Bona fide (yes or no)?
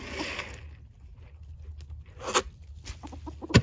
yes